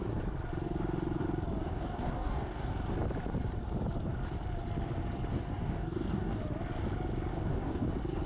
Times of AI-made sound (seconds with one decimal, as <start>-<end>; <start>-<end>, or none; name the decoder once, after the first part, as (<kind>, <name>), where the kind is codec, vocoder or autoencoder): 1.7-2.7 (codec, DAC); 5.3-6.4; 7.3-7.9